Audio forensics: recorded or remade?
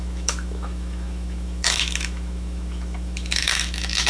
remade